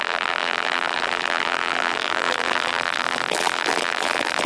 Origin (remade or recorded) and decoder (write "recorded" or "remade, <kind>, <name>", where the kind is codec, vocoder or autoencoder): remade, vocoder, BigVGAN v2